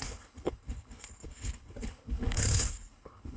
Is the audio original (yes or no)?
no